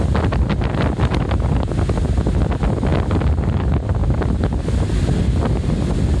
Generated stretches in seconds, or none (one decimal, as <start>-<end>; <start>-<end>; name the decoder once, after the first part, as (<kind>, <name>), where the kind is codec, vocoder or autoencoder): none